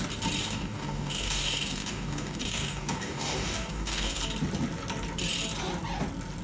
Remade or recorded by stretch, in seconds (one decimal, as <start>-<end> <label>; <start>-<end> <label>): 0.0-0.4 recorded; 0.4-4.2 remade; 4.2-6.4 recorded